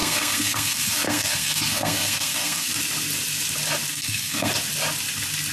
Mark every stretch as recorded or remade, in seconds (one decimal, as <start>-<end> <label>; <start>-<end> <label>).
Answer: 0.0-2.7 remade; 2.7-3.9 recorded; 3.9-4.5 remade; 4.5-5.5 recorded